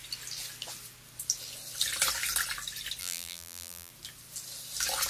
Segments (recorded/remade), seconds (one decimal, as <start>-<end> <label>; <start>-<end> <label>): 0.0-3.0 recorded; 3.0-3.9 remade; 3.9-5.1 recorded